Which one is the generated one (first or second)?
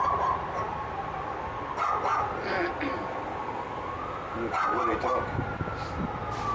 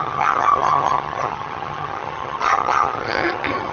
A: second